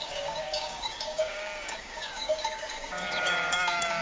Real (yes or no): no